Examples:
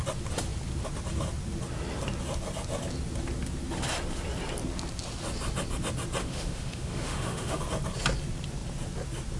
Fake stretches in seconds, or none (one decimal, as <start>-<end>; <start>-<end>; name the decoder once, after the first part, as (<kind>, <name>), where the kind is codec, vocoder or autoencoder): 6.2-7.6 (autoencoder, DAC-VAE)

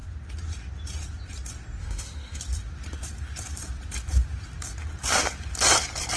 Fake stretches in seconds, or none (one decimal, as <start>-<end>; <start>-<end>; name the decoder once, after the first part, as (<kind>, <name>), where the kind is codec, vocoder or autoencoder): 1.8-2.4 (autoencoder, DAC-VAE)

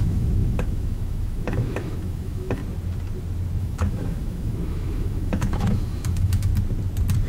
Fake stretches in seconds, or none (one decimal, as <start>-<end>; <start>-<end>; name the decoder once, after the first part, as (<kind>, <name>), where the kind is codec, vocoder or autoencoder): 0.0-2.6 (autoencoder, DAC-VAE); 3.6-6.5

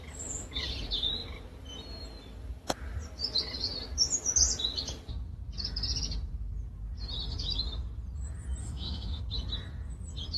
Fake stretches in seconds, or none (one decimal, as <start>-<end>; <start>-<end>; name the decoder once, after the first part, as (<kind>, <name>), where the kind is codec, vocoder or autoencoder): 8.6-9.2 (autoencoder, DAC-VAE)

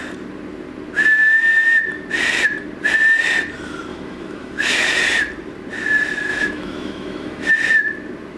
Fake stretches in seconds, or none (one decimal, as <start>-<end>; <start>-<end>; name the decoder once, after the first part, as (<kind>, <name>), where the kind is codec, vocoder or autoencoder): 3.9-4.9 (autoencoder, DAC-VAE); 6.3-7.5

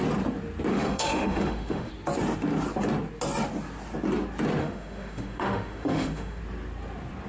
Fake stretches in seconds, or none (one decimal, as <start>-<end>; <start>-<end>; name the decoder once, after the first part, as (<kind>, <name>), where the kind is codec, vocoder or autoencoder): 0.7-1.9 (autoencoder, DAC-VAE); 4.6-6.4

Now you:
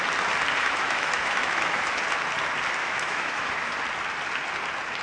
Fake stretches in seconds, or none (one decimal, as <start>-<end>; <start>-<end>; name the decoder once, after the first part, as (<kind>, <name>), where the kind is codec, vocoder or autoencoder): 0.6-1.9 (autoencoder, DAC-VAE); 2.8-3.7